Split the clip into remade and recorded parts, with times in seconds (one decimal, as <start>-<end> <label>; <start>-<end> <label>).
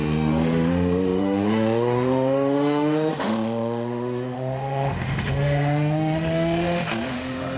0.0-7.6 remade